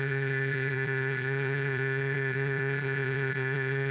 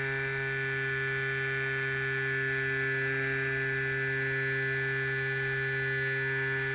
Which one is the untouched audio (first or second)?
second